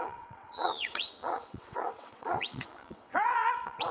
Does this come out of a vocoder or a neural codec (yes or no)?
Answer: yes